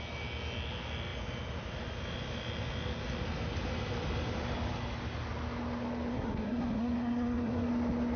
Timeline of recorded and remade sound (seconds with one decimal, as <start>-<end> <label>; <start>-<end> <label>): 0.0-6.1 recorded; 6.1-7.7 remade; 7.7-8.2 recorded